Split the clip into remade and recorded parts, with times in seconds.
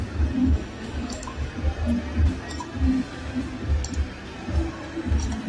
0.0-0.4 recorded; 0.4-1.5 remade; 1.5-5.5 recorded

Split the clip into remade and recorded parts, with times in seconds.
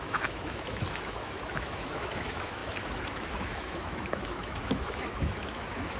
0.0-6.0 remade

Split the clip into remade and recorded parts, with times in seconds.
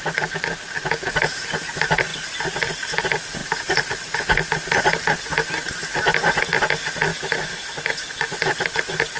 0.0-7.1 recorded; 7.1-8.3 remade; 8.3-9.2 recorded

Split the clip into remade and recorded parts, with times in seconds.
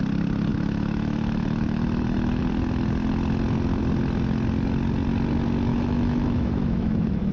0.0-0.5 recorded; 0.5-2.4 remade; 2.4-5.7 recorded; 5.7-7.3 remade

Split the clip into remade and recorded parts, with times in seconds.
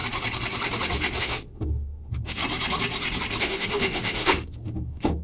0.0-1.2 recorded; 1.2-2.4 remade; 2.4-3.4 recorded; 3.4-5.2 remade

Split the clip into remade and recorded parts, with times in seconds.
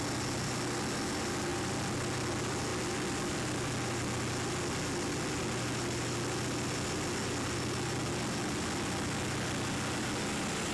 0.0-10.7 recorded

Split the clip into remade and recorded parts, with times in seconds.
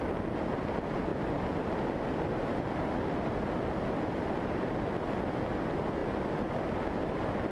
0.0-7.5 recorded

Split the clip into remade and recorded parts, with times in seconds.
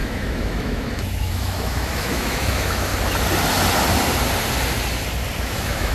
0.0-2.9 remade; 2.9-5.4 recorded; 5.4-5.9 remade